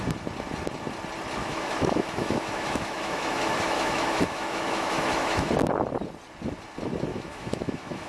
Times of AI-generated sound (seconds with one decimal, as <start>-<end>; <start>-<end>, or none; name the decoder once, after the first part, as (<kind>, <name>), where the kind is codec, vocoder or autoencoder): 1.4-5.5 (autoencoder, DAC-VAE); 7.1-8.1